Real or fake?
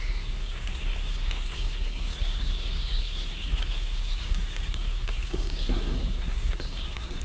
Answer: fake